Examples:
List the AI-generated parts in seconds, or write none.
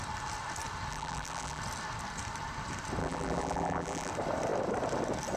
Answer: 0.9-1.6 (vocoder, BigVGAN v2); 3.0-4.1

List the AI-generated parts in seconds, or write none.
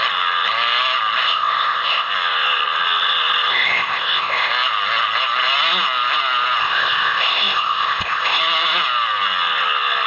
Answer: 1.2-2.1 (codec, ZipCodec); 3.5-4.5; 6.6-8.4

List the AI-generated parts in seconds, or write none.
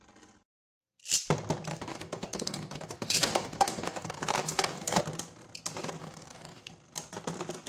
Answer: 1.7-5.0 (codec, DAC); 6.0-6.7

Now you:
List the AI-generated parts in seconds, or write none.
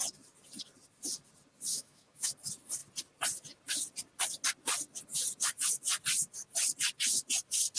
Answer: 1.7-2.3 (autoencoder, DAC-VAE)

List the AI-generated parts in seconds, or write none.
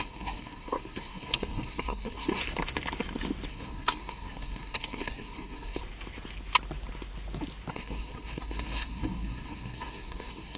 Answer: 0.0-2.4 (codec, SNAC); 3.5-5.8; 7.7-10.6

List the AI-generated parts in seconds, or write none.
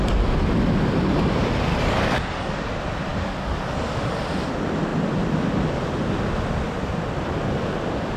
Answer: 1.7-2.7 (codec, DAC); 3.1-4.1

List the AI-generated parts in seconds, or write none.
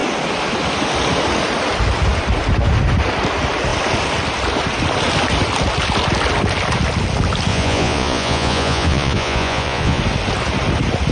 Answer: 7.5-10.0 (vocoder, Vocos)